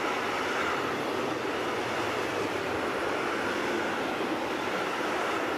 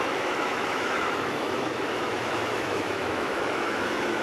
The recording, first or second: first